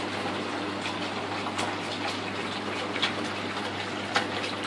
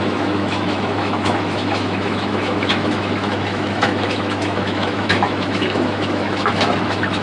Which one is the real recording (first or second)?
first